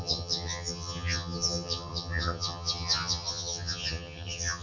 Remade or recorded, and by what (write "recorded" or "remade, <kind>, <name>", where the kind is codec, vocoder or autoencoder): remade, vocoder, HiFi-GAN